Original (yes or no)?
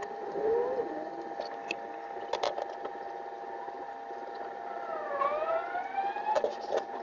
yes